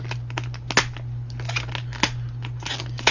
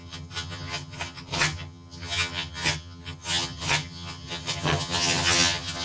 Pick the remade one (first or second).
second